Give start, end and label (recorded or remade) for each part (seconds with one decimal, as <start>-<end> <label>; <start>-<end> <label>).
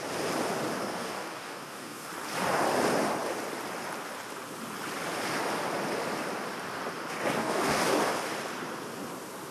0.0-0.8 recorded; 0.8-2.1 remade; 2.1-7.4 recorded; 7.4-8.0 remade; 8.0-9.5 recorded